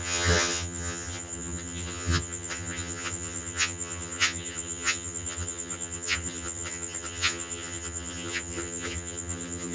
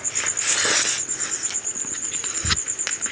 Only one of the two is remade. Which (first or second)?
first